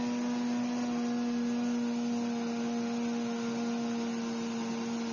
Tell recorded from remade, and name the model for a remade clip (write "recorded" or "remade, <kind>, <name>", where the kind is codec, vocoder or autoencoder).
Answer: recorded